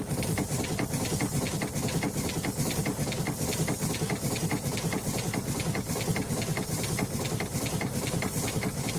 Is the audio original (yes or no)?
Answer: yes